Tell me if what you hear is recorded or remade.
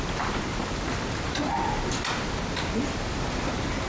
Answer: recorded